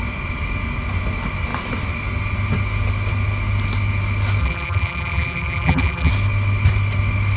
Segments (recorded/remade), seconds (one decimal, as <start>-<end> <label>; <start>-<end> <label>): 0.0-4.4 recorded; 4.4-6.1 remade; 6.1-7.4 recorded